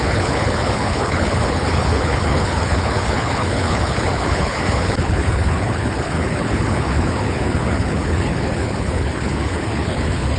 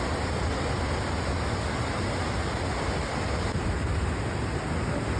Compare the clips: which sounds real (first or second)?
second